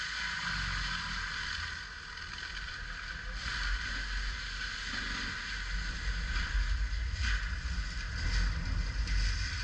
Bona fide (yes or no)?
yes